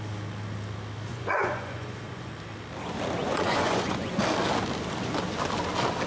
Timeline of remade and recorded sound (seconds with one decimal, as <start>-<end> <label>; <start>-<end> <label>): 0.0-1.1 recorded; 1.1-2.3 remade; 2.3-3.2 recorded; 3.2-4.2 remade; 4.2-6.1 recorded